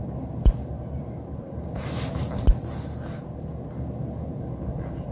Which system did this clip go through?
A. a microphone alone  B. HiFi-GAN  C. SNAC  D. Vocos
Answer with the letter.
A